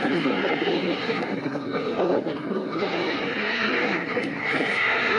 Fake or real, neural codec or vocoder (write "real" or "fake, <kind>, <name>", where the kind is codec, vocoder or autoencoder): fake, codec, SNAC